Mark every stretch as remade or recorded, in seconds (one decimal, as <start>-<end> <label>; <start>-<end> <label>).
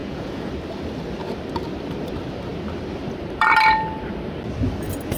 0.0-0.5 remade; 0.5-5.2 recorded